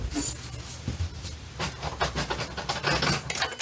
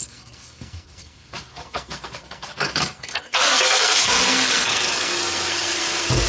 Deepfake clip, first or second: second